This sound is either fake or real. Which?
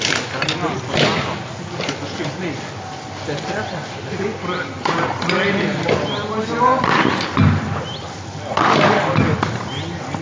real